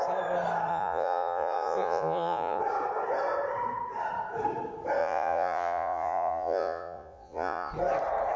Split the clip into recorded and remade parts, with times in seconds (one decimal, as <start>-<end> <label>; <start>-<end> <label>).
0.0-0.7 recorded; 0.7-2.6 remade; 2.6-5.0 recorded; 5.0-7.7 remade; 7.7-8.4 recorded